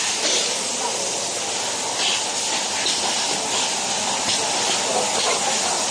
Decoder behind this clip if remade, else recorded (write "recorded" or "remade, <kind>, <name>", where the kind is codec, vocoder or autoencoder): recorded